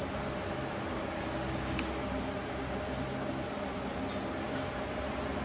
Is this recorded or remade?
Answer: recorded